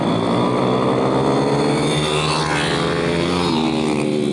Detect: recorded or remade recorded